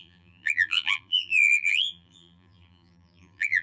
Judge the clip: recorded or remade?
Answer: remade